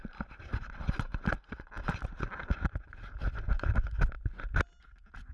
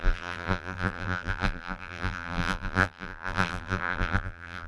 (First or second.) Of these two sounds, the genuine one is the first